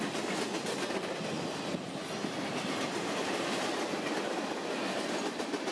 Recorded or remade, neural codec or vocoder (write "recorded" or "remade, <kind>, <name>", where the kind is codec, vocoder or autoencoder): recorded